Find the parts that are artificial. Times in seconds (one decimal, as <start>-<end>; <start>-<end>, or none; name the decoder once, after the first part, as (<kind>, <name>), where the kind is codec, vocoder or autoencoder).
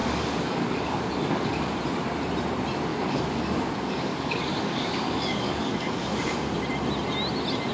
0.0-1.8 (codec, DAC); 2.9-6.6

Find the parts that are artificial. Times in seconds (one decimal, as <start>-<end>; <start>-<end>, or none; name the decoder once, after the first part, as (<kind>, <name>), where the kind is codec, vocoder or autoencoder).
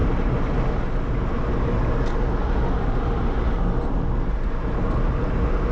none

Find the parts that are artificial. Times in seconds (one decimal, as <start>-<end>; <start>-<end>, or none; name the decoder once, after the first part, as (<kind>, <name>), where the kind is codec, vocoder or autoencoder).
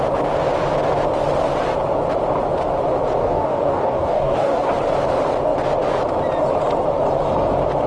3.2-4.7 (codec, DAC)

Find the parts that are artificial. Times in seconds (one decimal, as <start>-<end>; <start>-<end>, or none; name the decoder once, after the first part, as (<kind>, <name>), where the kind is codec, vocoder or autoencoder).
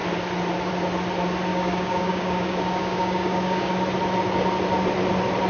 1.5-3.7 (codec, DAC)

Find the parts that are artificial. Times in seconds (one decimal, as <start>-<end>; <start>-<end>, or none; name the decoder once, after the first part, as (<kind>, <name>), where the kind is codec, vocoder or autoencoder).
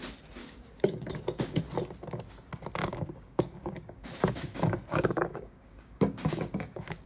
0.4-1.6 (codec, DAC); 2.8-7.1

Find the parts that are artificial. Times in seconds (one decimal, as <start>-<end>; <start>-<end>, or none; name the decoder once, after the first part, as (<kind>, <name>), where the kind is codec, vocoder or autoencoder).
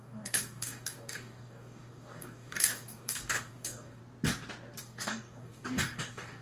0.0-4.0 (codec, DAC); 4.8-6.4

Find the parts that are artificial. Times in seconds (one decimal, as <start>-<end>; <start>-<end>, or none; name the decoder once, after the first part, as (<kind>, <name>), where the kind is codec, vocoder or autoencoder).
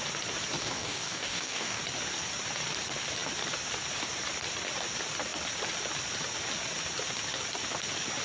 0.6-1.8 (codec, DAC)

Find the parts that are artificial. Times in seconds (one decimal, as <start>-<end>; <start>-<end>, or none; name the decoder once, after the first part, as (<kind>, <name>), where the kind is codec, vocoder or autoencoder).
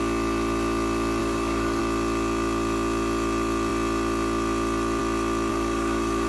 1.2-1.8 (codec, DAC); 5.5-6.3